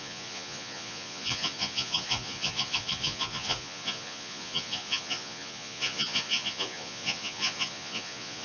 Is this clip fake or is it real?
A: fake